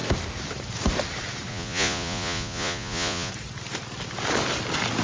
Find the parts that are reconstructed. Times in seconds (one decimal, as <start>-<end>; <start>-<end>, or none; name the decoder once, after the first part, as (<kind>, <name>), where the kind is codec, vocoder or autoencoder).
1.5-3.3 (vocoder, Vocos)